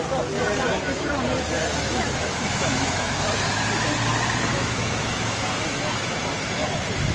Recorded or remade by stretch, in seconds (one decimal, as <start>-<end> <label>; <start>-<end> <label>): 0.0-1.7 recorded; 1.7-3.6 remade; 3.6-4.5 recorded; 4.5-6.1 remade; 6.1-7.1 recorded